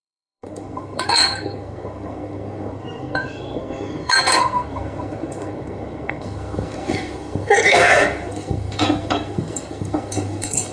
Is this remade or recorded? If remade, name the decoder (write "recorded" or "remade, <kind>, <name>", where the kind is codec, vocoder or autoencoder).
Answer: remade, codec, SNAC